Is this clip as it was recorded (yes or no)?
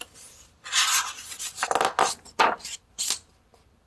yes